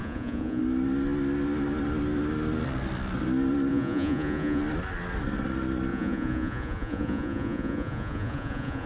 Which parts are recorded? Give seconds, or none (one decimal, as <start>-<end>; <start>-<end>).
0.6-3.7; 4.6-5.9